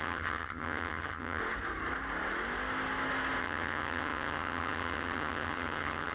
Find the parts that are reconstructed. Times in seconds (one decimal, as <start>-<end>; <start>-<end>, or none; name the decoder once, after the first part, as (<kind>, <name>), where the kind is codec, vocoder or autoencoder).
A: 0.0-1.4 (vocoder, HiFi-GAN); 3.4-6.1